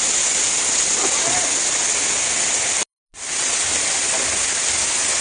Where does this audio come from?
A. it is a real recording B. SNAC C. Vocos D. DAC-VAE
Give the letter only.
A